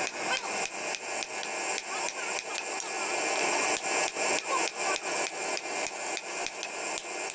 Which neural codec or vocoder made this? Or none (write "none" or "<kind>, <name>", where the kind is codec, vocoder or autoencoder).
none